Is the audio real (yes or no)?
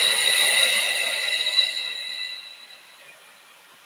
yes